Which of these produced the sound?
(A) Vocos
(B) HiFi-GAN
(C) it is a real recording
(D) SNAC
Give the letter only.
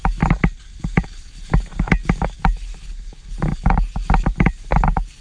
C